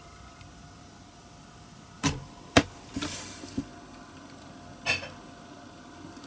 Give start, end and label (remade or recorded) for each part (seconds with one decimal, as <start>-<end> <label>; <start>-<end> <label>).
0.0-3.7 remade; 3.7-6.3 recorded